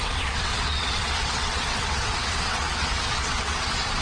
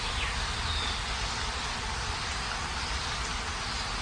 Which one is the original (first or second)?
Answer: second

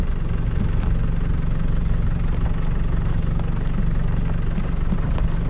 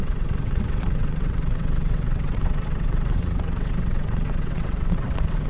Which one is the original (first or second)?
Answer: first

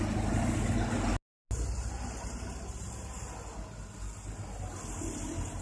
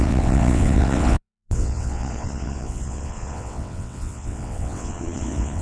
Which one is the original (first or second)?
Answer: first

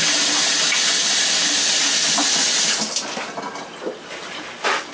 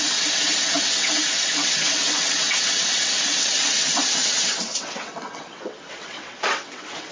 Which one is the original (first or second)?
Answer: first